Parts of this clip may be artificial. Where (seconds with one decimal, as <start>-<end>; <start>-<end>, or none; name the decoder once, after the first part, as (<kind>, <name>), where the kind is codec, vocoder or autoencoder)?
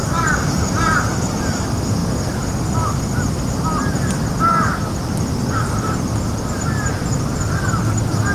none